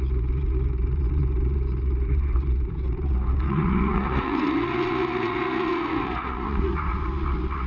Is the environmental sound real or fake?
fake